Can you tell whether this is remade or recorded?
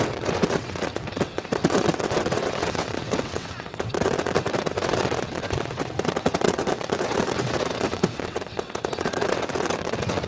remade